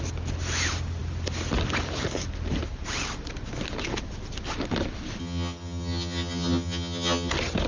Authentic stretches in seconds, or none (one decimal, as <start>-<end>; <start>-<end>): 0.0-5.2; 7.3-7.7